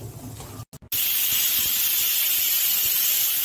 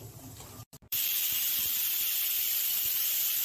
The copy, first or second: second